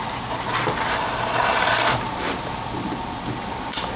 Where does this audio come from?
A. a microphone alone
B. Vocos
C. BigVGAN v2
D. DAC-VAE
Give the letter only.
A